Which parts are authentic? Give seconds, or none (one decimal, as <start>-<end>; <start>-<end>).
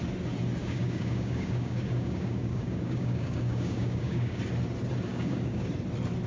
0.0-0.6; 4.4-5.1; 5.7-6.3